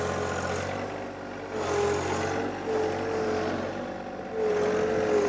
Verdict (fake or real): real